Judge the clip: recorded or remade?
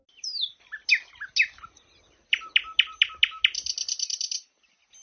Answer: recorded